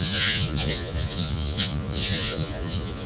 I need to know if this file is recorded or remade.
remade